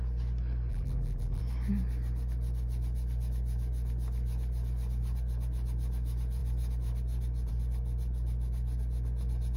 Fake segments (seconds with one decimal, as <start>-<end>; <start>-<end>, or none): 0.7-1.4